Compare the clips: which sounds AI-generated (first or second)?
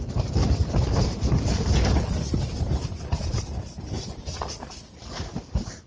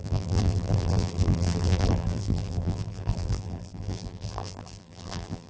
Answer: second